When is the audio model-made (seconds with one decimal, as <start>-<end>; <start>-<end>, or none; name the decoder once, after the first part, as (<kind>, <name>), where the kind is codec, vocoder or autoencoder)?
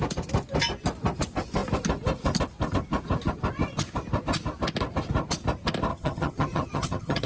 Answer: 5.9-7.3 (vocoder, HiFi-GAN)